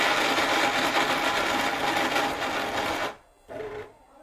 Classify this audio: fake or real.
real